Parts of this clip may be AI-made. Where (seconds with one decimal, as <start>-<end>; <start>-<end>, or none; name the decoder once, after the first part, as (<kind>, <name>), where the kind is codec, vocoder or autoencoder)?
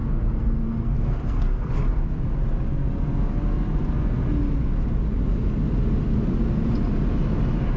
0.0-1.7 (codec, SNAC)